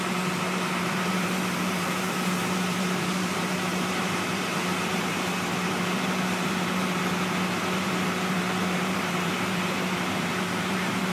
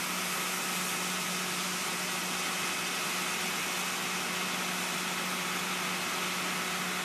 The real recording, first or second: second